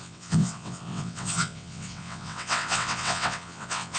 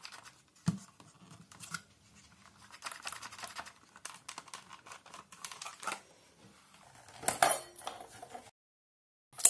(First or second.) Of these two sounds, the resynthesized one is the first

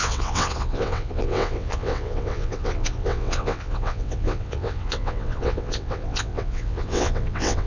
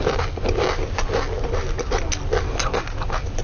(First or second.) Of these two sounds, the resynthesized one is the first